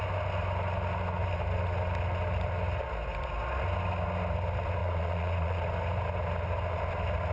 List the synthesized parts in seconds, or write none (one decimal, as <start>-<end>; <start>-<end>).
4.8-5.6